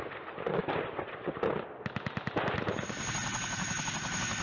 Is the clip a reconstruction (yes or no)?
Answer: no